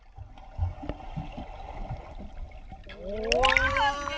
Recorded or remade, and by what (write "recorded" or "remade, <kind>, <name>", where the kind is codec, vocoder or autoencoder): recorded